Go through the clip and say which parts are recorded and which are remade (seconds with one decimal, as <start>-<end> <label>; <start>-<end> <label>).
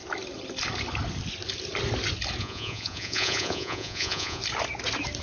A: 0.0-2.4 recorded; 2.4-4.4 remade; 4.4-5.2 recorded